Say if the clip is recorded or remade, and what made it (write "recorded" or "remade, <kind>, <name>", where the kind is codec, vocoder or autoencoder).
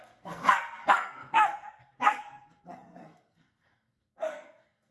remade, codec, SNAC